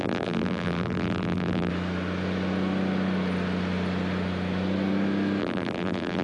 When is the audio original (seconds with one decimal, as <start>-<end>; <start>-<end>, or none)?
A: 1.7-5.4